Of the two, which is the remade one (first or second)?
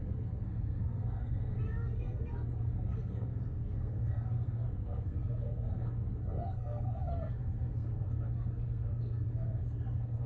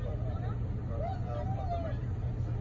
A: first